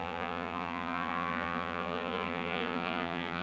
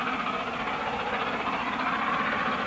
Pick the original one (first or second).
second